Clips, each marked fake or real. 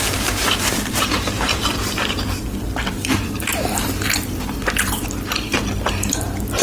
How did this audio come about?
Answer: fake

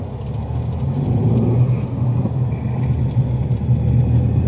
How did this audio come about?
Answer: real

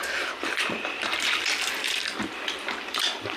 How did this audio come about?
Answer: fake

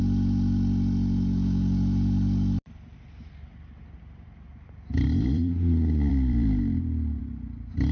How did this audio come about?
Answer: fake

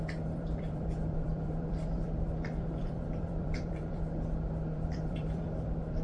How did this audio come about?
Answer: fake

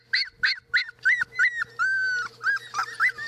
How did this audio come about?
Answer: real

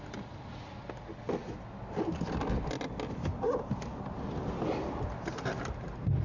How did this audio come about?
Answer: real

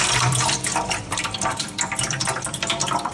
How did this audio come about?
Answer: fake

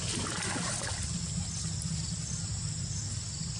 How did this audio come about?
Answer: real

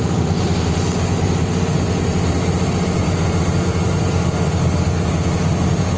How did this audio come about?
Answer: real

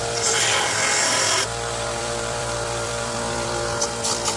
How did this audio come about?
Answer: fake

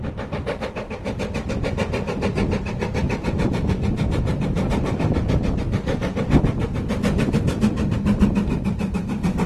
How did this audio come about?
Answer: real